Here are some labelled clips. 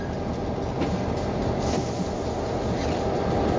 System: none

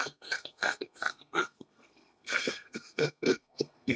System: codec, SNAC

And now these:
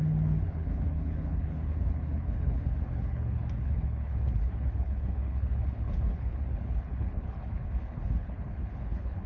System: codec, HILCodec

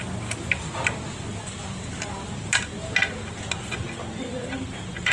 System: none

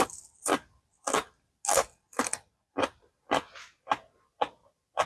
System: none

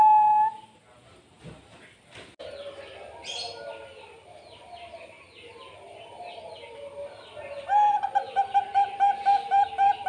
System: none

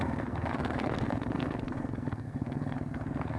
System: codec, SNAC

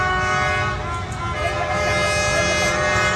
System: none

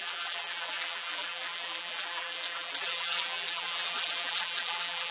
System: vocoder, BigVGAN v2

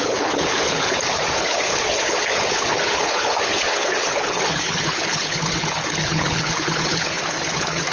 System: codec, HILCodec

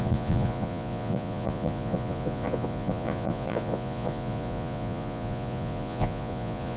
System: vocoder, Vocos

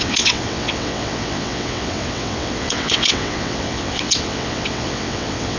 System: vocoder, WaveNeXt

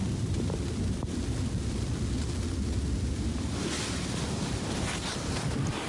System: none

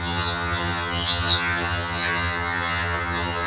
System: vocoder, HiFi-GAN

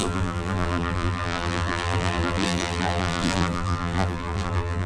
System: vocoder, BigVGAN v2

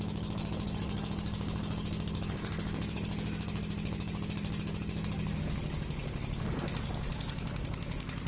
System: codec, DAC